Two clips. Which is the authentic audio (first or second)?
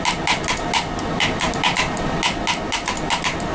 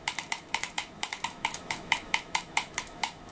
first